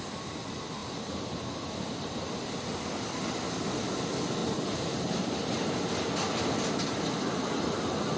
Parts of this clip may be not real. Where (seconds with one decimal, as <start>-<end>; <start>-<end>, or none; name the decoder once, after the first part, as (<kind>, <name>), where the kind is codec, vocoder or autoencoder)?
0.8-1.5 (vocoder, BigVGAN v2); 4.4-5.3